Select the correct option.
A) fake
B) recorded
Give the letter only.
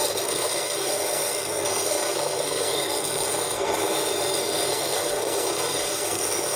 A